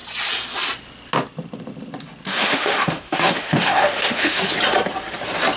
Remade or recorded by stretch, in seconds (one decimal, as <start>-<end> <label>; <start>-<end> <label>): 0.0-2.3 recorded; 2.3-4.5 remade; 4.5-5.6 recorded